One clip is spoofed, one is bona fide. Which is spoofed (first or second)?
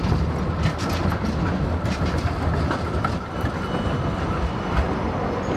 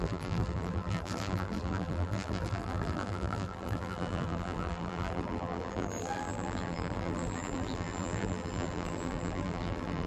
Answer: second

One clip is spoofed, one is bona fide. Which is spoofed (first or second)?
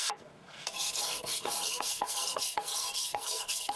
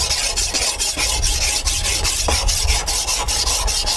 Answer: first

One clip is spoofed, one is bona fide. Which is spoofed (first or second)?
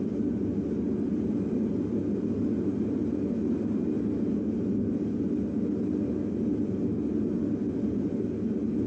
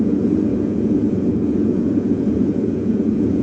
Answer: second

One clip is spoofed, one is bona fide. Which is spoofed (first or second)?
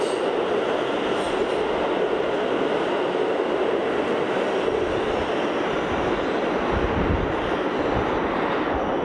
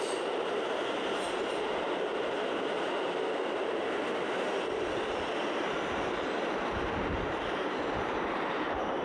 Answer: second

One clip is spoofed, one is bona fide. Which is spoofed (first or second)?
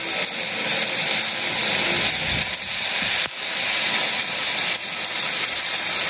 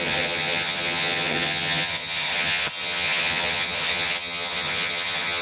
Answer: second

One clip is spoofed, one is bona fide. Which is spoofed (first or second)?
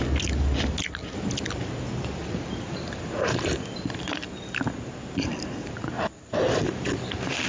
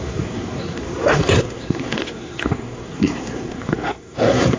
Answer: second